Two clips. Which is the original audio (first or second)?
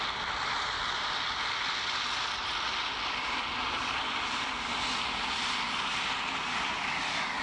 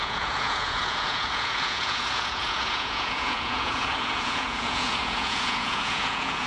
first